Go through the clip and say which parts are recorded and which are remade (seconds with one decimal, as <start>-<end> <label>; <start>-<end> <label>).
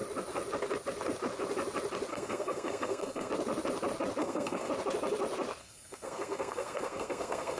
0.0-2.1 recorded; 2.1-3.3 remade; 3.3-4.2 recorded; 4.2-4.7 remade; 4.7-5.6 recorded; 5.6-7.6 remade